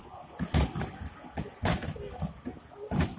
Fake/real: real